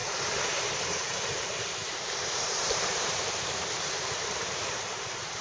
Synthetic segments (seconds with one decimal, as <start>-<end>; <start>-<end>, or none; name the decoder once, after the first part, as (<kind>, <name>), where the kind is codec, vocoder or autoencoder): 0.0-5.4 (vocoder, BigVGAN v2)